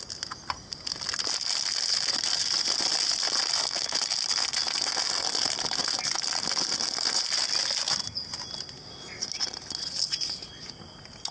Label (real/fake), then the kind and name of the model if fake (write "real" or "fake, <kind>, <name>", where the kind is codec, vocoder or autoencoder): real